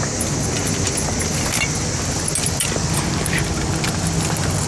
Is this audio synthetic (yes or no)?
no